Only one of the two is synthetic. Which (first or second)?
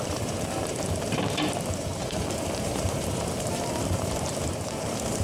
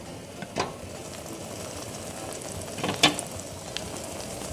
first